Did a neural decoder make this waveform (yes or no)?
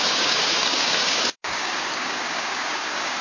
yes